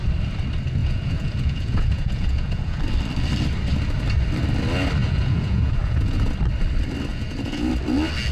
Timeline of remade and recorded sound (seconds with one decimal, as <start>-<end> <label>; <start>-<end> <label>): 0.0-0.8 recorded; 0.8-2.8 remade; 2.8-5.0 recorded; 5.0-6.3 remade; 6.3-7.1 recorded; 7.1-7.7 remade; 7.7-8.3 recorded